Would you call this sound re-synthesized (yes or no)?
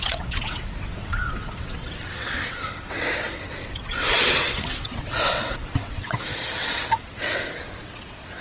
yes